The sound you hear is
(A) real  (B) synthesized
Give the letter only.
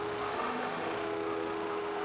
B